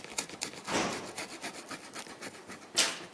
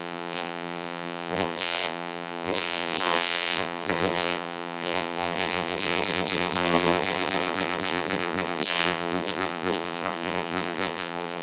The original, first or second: first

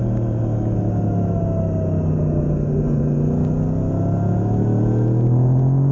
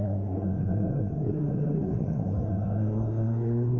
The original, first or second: first